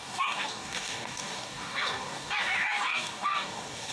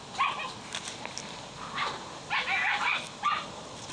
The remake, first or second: first